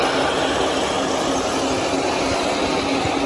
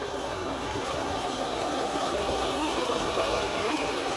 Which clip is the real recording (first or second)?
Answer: first